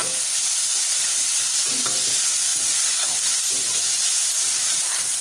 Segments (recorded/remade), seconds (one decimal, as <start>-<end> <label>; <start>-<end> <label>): 0.0-5.2 recorded